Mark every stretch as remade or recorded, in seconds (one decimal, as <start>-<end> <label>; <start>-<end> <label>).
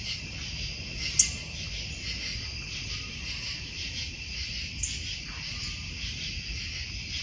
0.0-2.3 recorded; 2.3-2.9 remade; 2.9-7.2 recorded